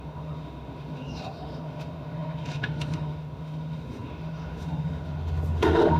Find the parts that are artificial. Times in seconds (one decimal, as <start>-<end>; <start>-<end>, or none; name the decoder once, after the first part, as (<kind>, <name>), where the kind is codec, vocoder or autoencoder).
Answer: 0.0-6.0 (autoencoder, DAC-VAE)